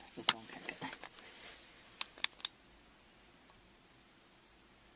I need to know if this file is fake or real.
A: real